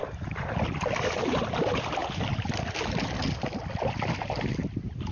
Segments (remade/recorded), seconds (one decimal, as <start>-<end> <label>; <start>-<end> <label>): 0.0-5.1 recorded